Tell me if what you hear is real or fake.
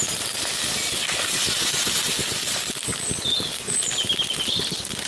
real